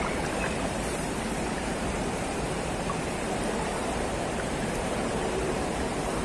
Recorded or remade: remade